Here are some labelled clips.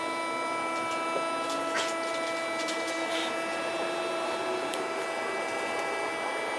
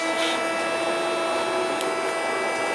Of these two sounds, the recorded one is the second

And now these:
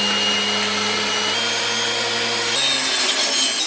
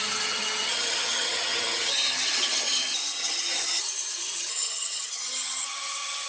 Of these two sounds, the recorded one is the first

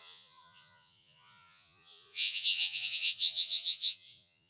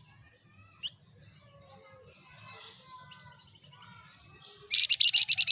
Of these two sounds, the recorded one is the second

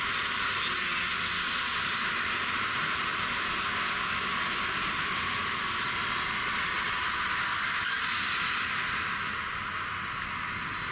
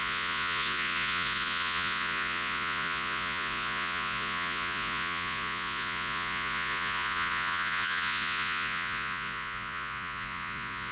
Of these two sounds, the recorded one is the first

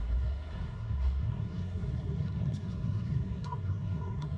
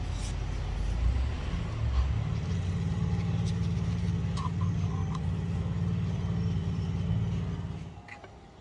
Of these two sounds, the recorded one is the second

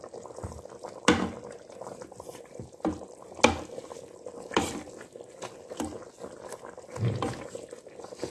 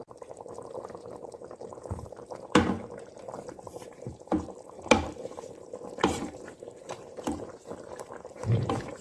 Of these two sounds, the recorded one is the first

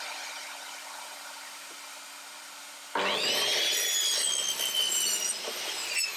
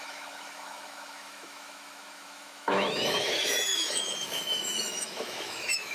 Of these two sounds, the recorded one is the first